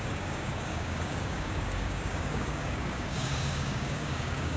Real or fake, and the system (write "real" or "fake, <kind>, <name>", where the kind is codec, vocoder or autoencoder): fake, codec, DAC